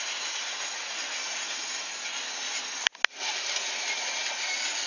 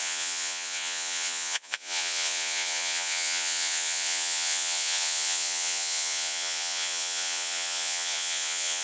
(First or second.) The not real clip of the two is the second